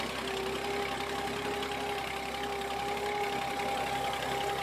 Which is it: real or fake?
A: real